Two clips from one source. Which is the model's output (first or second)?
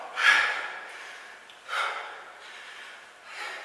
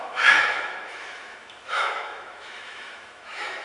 second